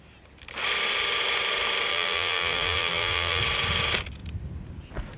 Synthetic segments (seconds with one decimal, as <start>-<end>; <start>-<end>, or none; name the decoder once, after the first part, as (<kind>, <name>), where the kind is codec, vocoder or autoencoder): 1.9-3.4 (vocoder, BigVGAN v2)